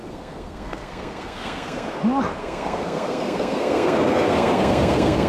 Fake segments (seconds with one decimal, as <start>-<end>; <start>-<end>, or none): 0.0-2.0; 2.4-5.3